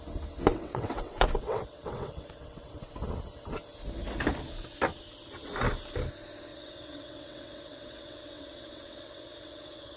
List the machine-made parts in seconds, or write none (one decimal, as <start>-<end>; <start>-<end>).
0.5-2.9; 6.5-10.0